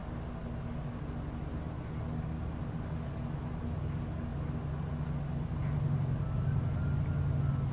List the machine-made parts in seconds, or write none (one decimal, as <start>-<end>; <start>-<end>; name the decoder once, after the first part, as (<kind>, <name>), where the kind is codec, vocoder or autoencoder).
none